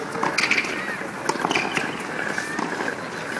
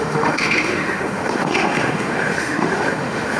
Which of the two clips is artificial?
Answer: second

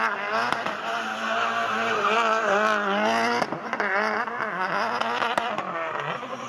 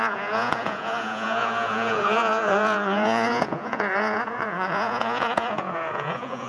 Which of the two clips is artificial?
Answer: second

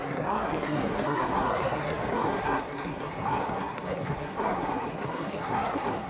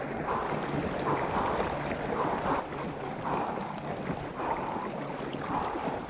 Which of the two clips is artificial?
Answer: first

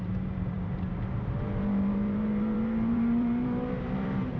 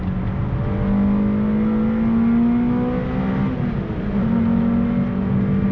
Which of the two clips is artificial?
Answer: first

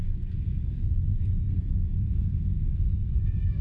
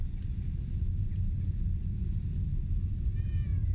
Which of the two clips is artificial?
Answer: first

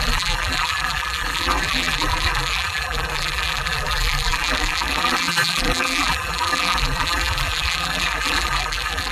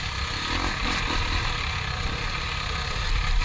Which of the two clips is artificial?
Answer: first